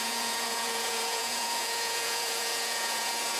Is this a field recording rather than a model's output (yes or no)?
no